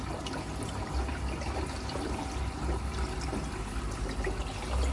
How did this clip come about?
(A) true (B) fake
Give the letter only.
A